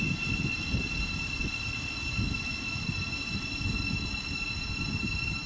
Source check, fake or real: real